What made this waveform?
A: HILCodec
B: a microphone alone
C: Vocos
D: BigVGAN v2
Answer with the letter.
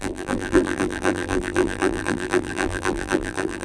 D